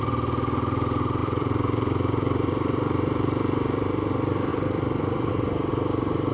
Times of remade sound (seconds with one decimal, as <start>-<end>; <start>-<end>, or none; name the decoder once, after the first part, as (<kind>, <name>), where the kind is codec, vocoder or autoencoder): 1.2-4.1 (vocoder, BigVGAN v2); 4.5-5.3